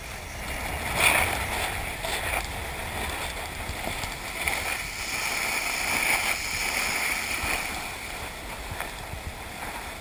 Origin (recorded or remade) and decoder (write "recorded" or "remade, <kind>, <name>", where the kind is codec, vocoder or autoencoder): recorded